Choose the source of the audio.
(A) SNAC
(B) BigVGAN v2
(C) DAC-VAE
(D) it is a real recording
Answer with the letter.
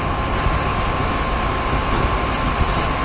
D